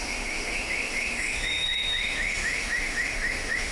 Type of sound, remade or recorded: remade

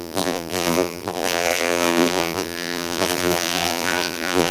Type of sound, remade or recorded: remade